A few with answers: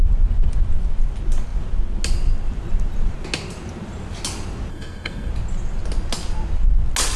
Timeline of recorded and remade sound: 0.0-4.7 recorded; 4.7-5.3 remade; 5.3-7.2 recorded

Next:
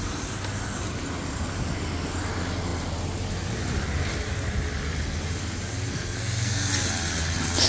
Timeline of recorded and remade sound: 0.0-5.9 recorded; 5.9-6.7 remade; 6.7-7.7 recorded